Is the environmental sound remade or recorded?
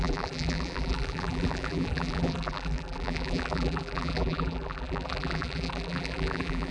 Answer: remade